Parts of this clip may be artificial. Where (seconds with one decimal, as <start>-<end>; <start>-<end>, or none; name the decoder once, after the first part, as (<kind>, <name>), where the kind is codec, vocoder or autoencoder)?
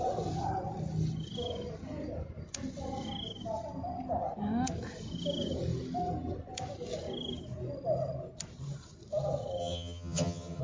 9.6-10.6 (vocoder, HiFi-GAN)